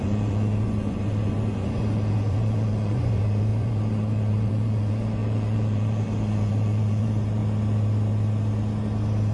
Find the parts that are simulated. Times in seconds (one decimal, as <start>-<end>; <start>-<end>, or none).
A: 0.0-7.4